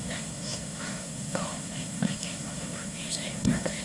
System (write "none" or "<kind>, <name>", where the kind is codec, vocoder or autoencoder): codec, SNAC